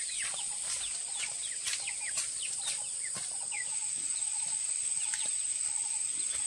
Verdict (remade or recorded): recorded